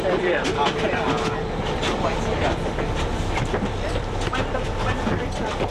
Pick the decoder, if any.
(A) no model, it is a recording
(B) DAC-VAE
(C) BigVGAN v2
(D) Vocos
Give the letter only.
C